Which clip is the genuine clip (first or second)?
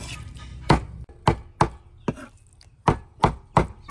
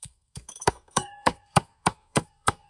first